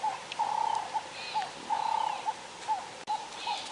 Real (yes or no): yes